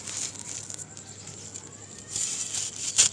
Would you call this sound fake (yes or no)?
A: no